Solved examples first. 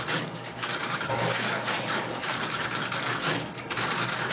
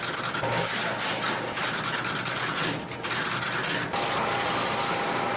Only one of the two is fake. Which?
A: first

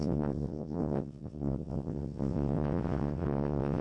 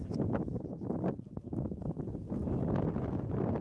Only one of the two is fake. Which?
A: first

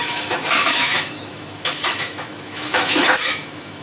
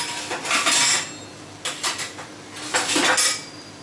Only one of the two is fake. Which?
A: first